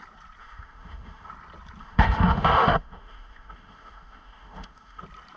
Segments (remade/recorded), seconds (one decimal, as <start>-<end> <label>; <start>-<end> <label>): 0.0-0.4 recorded; 0.4-1.3 remade; 1.3-1.8 recorded; 1.8-5.0 remade; 5.0-5.4 recorded